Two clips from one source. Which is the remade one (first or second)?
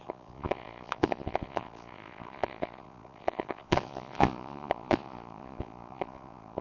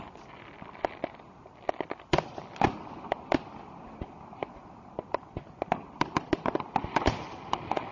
first